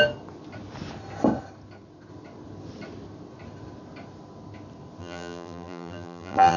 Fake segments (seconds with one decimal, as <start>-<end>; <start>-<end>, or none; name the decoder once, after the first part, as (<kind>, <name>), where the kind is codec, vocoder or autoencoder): 5.0-6.6 (vocoder, BigVGAN v2)